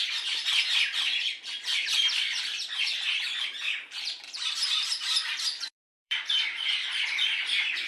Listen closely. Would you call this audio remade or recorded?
remade